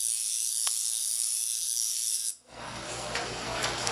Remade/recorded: remade